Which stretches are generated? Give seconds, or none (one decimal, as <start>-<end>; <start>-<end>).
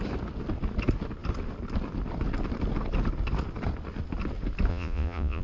4.7-5.4